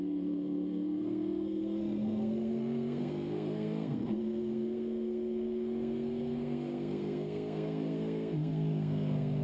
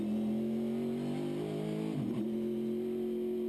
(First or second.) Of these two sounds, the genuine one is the second